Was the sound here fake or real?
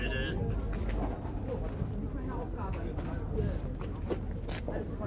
real